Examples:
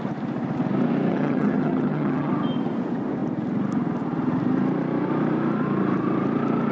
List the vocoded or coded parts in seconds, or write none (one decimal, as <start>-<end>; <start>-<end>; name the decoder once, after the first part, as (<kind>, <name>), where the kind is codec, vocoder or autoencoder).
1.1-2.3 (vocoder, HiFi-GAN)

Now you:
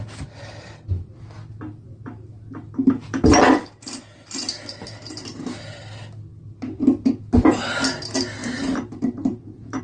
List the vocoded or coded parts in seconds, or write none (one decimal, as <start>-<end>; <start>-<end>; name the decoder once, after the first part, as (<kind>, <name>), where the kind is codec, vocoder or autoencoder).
4.5-5.8 (vocoder, BigVGAN v2); 6.3-7.1; 8.4-9.8

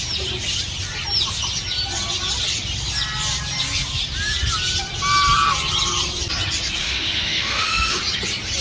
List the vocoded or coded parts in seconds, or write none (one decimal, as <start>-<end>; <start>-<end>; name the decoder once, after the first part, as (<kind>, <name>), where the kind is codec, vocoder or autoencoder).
6.8-8.0 (autoencoder, DAC-VAE)

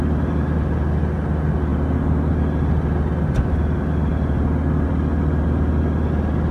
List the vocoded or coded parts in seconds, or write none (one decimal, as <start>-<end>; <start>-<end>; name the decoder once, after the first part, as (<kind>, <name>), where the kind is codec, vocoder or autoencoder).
none

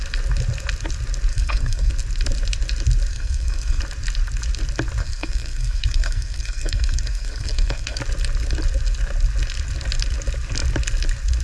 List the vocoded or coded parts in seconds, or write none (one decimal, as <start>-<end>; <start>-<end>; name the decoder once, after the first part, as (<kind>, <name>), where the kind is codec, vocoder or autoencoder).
1.3-1.9 (codec, SNAC); 3.1-3.8; 5.0-8.0